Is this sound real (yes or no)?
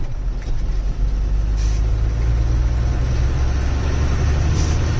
yes